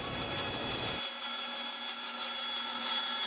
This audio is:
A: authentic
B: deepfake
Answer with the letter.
A